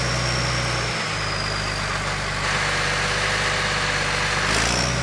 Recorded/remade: recorded